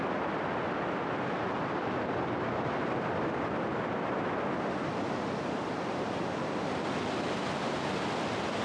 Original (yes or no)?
yes